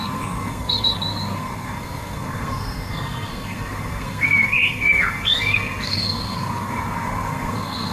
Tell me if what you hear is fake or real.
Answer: fake